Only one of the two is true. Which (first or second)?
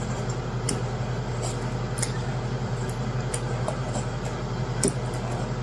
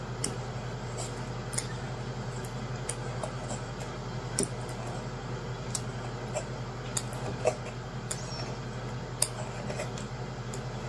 second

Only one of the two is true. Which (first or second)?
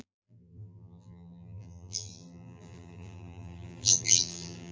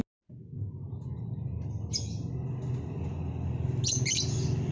second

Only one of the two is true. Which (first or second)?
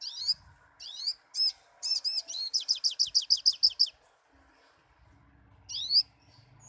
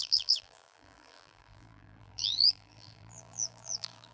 first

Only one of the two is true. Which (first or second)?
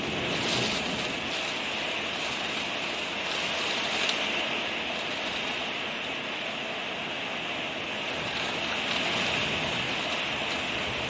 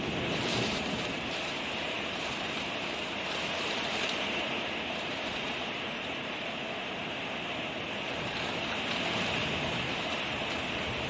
first